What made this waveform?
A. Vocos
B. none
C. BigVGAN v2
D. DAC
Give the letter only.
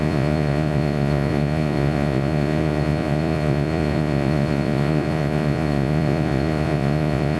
A